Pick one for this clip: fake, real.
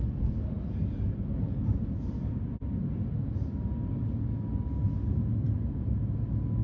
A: real